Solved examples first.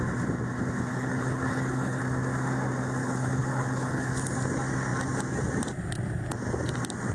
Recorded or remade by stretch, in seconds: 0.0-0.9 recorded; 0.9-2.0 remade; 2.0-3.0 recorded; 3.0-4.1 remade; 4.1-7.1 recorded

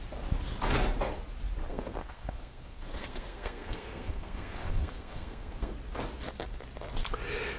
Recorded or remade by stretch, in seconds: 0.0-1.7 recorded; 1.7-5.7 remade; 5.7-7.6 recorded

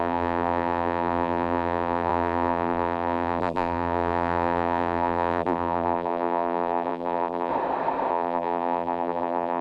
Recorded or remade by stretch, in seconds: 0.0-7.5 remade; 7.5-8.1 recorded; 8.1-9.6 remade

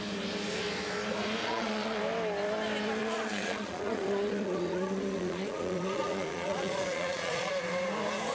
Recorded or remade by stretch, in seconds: 0.0-1.4 recorded; 1.4-2.0 remade; 2.0-3.0 recorded; 3.0-7.5 remade; 7.5-8.3 recorded

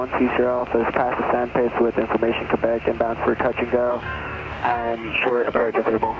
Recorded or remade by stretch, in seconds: 0.0-3.9 recorded; 3.9-6.2 remade